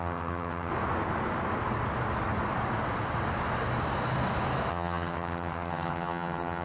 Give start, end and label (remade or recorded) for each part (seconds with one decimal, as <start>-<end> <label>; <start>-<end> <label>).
0.0-0.7 remade; 0.7-4.7 recorded; 4.7-6.6 remade